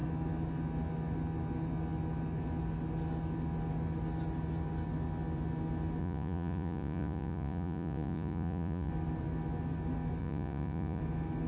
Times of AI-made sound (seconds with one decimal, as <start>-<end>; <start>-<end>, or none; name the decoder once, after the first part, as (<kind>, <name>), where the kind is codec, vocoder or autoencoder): 6.0-8.9 (vocoder, Vocos); 10.2-11.0